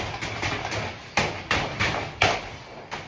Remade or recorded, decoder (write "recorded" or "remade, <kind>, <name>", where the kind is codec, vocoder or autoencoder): recorded